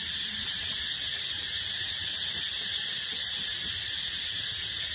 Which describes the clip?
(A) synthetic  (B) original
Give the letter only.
B